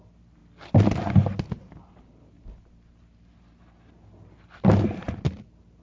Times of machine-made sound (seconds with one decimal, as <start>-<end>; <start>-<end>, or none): none